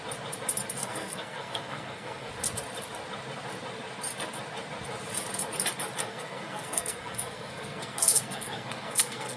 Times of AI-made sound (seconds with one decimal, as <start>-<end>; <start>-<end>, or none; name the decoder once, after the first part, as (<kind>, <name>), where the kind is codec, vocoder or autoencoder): 0.8-2.3 (codec, SNAC); 6.0-9.4